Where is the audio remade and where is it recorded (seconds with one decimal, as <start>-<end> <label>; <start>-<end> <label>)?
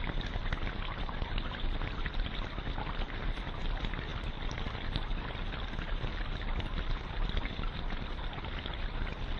0.0-9.4 recorded